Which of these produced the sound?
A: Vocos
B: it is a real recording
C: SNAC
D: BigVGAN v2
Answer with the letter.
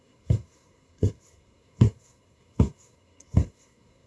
C